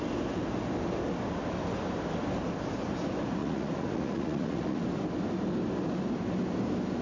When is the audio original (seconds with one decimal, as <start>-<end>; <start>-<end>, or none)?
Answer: 0.0-3.4; 4.8-7.0